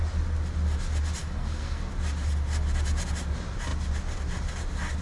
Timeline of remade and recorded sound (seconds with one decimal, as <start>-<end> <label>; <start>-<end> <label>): 0.0-1.2 recorded; 1.2-1.9 remade; 1.9-5.0 recorded